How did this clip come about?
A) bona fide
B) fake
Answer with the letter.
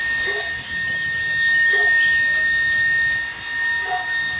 A